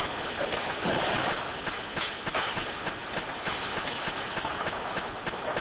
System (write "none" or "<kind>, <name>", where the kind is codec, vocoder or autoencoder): none